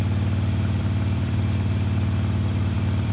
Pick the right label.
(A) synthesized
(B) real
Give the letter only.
A